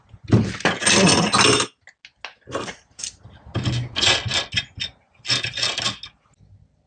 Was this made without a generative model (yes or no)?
yes